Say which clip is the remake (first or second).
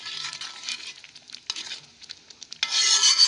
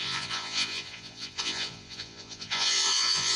second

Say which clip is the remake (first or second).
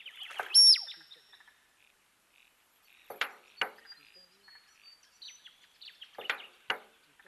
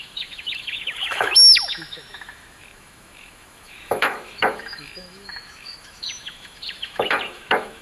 second